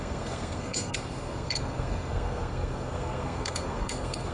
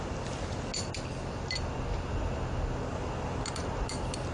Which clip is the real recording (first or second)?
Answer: second